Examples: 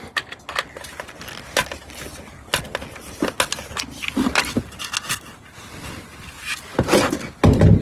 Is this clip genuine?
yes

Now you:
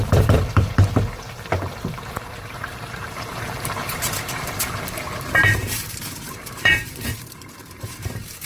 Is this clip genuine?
no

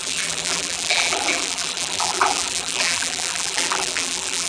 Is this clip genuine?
no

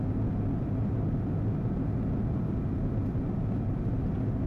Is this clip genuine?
yes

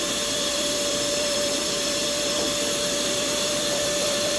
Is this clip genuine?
no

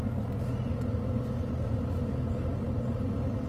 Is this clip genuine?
yes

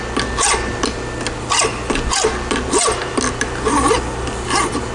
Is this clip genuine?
yes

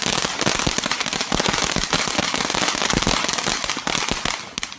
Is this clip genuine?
yes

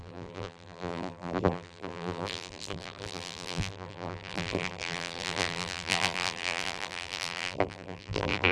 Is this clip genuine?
no